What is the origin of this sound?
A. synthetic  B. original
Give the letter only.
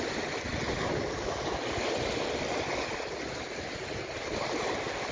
B